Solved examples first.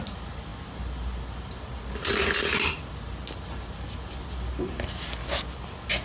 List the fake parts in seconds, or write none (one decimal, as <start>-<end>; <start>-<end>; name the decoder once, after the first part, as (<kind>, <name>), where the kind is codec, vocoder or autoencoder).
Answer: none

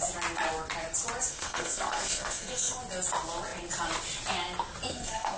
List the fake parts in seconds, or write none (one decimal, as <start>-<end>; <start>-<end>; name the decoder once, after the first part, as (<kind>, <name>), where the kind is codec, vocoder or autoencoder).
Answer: 1.3-2.7 (codec, SNAC); 4.9-5.4

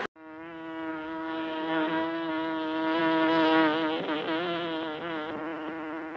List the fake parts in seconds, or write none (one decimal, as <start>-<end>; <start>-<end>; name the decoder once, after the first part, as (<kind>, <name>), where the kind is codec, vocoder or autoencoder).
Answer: 0.9-2.3 (codec, SNAC)